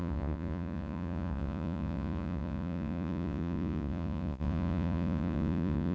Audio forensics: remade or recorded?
remade